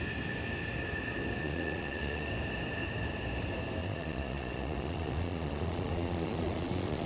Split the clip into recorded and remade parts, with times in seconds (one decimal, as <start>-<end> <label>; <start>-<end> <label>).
0.0-1.4 recorded; 1.4-2.3 remade; 2.3-3.8 recorded; 3.8-7.1 remade